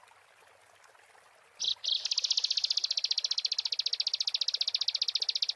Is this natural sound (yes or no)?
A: yes